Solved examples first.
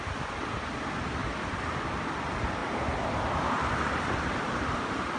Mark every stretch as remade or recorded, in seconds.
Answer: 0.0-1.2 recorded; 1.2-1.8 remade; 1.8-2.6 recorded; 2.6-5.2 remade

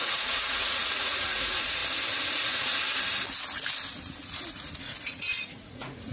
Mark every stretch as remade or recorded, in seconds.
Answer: 0.0-1.8 remade; 1.8-2.3 recorded; 2.3-2.8 remade; 2.8-4.2 recorded; 4.2-6.1 remade

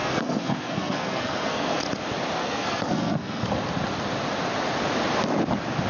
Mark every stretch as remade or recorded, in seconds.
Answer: 0.0-1.8 remade; 1.8-2.4 recorded; 2.4-3.5 remade; 3.5-5.9 recorded